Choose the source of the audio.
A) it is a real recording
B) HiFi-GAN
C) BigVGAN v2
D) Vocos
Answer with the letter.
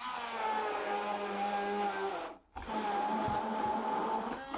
A